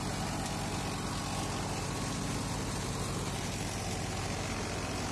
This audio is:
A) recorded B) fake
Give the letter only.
A